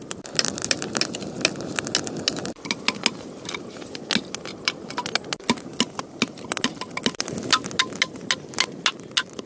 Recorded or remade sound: recorded